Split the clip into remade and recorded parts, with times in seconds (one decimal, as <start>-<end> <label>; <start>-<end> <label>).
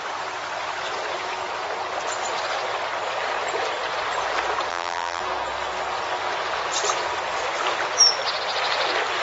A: 0.0-4.7 recorded; 4.7-5.2 remade; 5.2-9.2 recorded